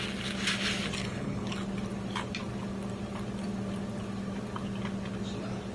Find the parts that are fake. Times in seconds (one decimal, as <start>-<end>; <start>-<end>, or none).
1.0-1.5